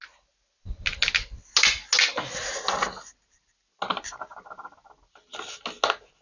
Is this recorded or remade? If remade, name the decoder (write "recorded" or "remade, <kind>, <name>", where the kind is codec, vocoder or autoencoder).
recorded